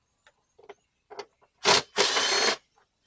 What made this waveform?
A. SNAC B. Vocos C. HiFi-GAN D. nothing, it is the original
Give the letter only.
D